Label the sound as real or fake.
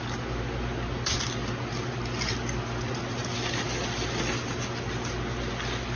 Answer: real